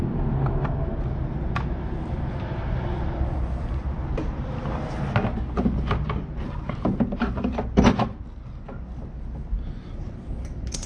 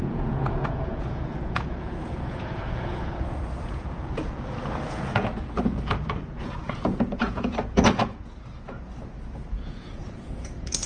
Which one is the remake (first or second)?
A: second